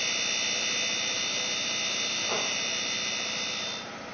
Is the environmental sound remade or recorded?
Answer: recorded